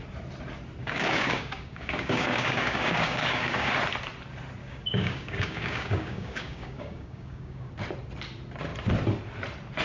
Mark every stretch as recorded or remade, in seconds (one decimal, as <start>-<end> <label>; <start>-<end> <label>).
0.0-0.8 recorded; 0.8-3.7 remade; 3.7-4.6 recorded; 4.6-7.7 remade; 7.7-9.8 recorded